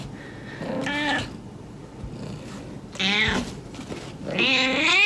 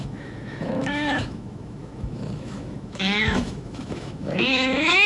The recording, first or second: first